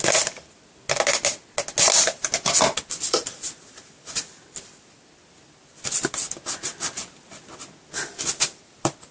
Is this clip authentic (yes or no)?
yes